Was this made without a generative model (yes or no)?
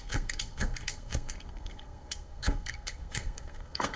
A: no